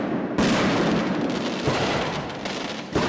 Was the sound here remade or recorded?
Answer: recorded